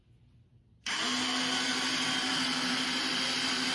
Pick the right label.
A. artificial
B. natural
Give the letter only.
B